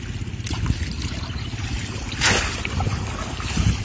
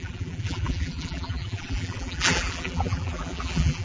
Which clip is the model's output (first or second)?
second